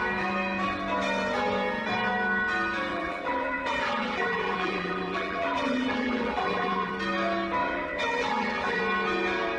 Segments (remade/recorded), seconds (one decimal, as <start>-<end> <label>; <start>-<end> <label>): 0.0-2.9 recorded; 2.9-6.9 remade; 6.9-7.6 recorded; 7.6-8.8 remade; 8.8-9.6 recorded